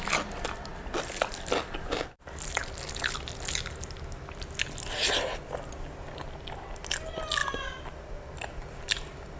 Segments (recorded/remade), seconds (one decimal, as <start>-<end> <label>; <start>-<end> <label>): 0.0-9.4 recorded

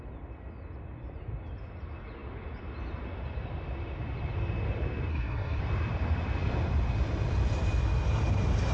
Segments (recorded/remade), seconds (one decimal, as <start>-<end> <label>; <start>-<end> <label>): 0.0-5.1 recorded; 5.1-5.6 remade; 5.6-8.7 recorded

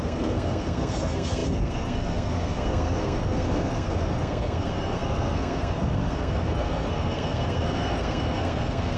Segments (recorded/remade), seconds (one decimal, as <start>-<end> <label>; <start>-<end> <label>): 0.0-9.0 remade

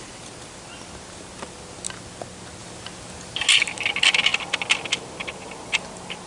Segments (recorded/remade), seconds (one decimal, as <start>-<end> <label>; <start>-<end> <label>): 0.0-6.3 recorded

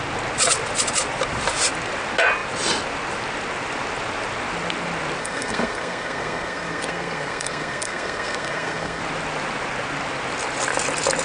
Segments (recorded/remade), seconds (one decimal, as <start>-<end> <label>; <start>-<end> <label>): 0.0-5.2 recorded; 5.2-9.0 remade; 9.0-11.2 recorded

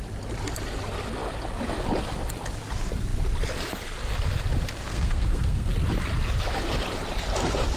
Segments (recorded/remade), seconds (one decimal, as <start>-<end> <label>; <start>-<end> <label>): 0.0-4.9 recorded; 4.9-5.7 remade; 5.7-7.8 recorded

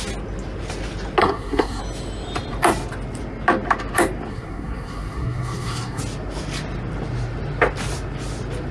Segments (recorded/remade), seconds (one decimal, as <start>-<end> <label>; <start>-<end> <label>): 0.0-1.2 recorded; 1.2-1.8 remade; 1.8-4.3 recorded; 4.3-6.0 remade; 6.0-8.7 recorded

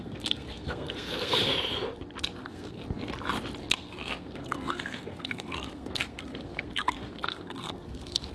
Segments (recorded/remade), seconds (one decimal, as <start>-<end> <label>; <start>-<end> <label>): 0.0-1.5 remade; 1.5-2.4 recorded; 2.4-2.8 remade; 2.8-3.6 recorded; 3.6-8.3 remade